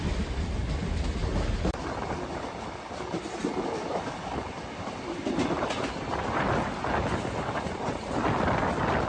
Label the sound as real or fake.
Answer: real